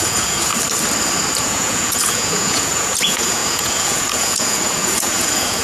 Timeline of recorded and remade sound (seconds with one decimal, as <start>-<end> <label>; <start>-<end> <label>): 0.0-0.5 remade; 0.5-1.4 recorded; 1.4-5.6 remade